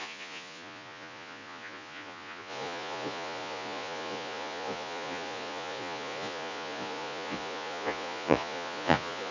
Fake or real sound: fake